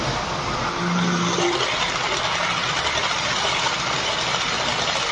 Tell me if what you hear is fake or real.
real